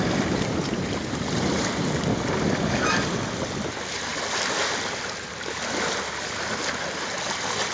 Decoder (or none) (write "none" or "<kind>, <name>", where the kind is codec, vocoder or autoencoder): none